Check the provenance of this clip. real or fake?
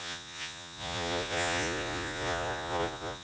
fake